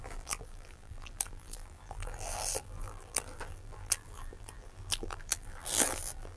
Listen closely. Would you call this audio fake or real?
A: fake